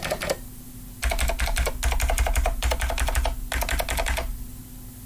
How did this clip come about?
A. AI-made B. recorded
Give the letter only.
B